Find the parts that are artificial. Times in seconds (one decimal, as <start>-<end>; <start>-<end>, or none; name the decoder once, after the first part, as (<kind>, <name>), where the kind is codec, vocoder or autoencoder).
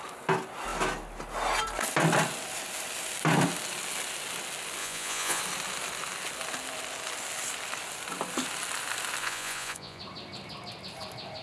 4.8-5.4 (vocoder, Vocos); 9.2-10.0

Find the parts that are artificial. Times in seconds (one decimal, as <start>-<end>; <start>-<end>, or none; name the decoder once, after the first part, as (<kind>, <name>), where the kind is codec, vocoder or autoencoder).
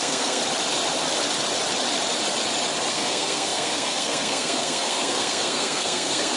0.0-0.4 (codec, SNAC); 2.9-6.4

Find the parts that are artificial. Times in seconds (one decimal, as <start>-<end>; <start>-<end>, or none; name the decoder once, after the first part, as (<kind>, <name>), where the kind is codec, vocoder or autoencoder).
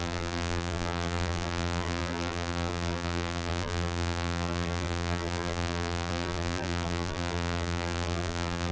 0.0-8.7 (vocoder, BigVGAN v2)